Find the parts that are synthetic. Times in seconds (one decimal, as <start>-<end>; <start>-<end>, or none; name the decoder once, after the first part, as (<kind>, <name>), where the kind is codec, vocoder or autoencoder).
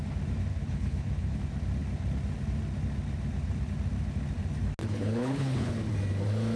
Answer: 0.5-1.4 (codec, HILCodec); 4.8-5.9